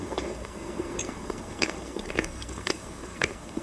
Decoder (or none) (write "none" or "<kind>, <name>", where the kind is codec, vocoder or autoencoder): codec, SNAC